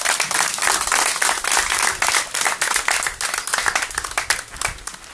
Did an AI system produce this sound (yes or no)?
no